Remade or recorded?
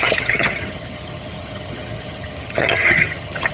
remade